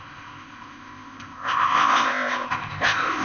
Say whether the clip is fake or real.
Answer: fake